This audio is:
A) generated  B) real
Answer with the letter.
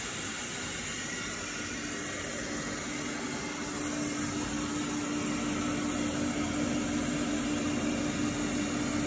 B